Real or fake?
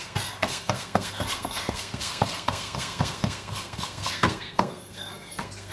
fake